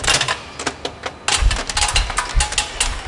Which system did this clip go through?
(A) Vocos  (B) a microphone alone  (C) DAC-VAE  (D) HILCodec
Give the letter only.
B